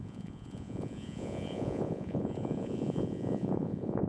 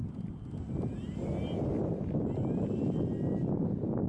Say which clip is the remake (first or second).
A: first